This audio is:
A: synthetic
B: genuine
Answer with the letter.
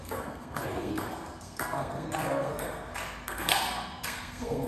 A